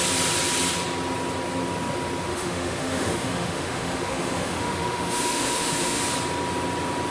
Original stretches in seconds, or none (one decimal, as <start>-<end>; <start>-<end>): 0.0-2.3; 6.0-7.1